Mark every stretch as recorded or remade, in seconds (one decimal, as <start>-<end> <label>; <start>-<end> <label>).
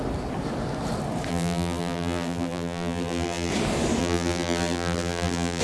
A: 0.0-1.3 recorded; 1.3-3.5 remade; 3.5-4.0 recorded; 4.0-5.6 remade